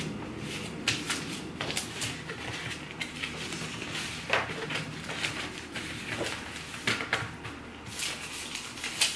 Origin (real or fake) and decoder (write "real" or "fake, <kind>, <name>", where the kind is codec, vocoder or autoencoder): real